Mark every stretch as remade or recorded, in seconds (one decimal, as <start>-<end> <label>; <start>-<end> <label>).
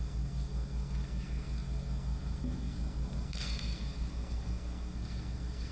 0.0-5.7 remade